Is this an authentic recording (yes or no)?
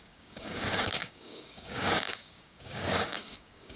no